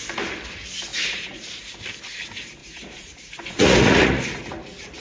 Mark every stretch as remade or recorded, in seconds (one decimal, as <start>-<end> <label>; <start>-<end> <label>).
0.0-0.9 recorded; 0.9-1.6 remade; 1.6-2.6 recorded; 2.6-4.2 remade; 4.2-5.0 recorded